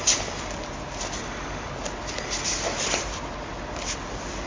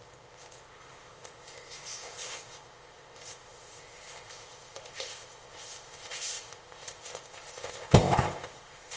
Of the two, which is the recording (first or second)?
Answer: first